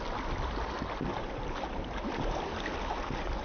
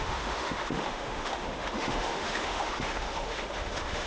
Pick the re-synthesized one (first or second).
second